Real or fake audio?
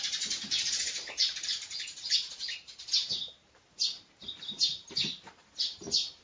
fake